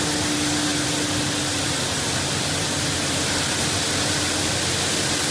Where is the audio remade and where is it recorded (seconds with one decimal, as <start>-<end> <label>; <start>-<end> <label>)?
0.0-5.3 recorded